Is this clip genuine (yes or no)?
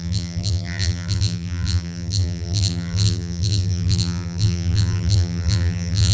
no